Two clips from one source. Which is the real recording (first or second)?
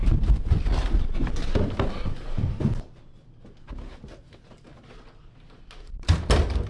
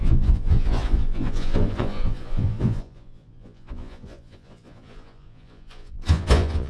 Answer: first